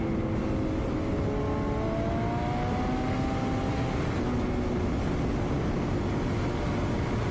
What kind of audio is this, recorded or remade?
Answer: recorded